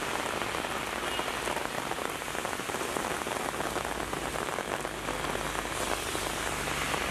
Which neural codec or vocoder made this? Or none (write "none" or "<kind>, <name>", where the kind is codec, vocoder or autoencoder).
none